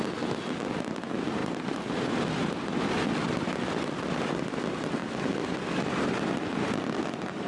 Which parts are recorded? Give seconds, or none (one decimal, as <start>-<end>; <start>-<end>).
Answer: 0.0-1.4; 2.8-5.0; 5.8-7.5